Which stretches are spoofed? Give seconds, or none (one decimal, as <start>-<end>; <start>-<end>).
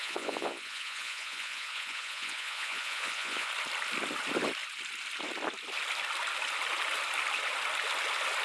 0.0-3.5